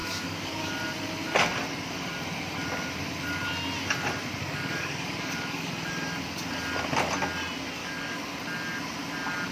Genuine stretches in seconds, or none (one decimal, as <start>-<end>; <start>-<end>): 0.7-4.4; 5.7-7.8; 8.4-9.5